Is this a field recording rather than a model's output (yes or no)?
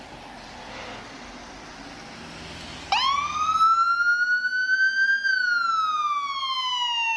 yes